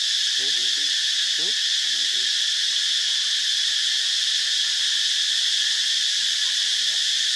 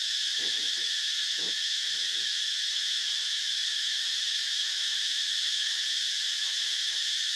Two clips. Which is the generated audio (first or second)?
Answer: second